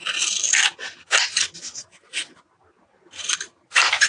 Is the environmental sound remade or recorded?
recorded